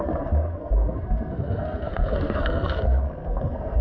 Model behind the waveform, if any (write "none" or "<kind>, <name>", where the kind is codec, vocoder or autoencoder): codec, SNAC